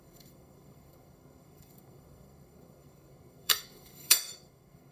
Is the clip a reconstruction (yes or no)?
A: yes